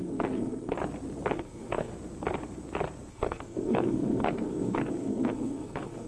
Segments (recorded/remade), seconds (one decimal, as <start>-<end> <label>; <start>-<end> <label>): 0.0-0.8 remade; 0.8-1.3 recorded; 1.3-1.9 remade; 1.9-3.1 recorded; 3.1-6.1 remade